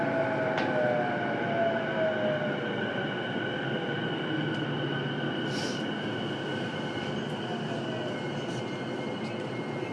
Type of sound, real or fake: real